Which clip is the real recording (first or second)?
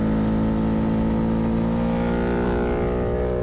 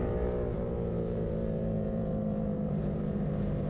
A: first